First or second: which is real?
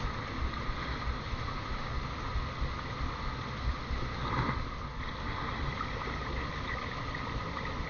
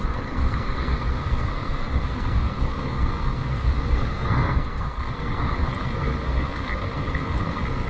first